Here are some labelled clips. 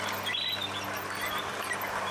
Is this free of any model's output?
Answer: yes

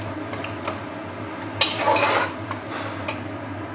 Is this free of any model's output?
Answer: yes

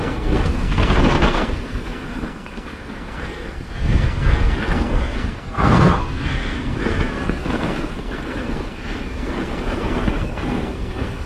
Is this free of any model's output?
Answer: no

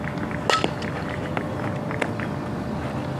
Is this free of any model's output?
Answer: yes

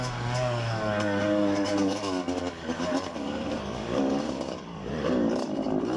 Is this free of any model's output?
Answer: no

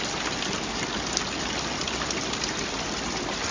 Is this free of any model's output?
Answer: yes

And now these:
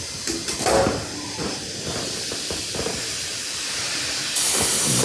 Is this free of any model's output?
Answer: yes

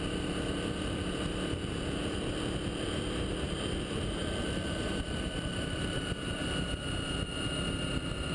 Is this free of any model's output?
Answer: no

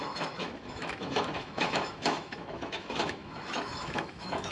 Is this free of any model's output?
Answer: no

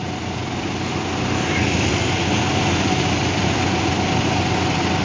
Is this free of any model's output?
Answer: yes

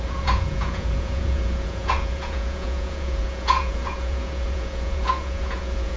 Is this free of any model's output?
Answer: no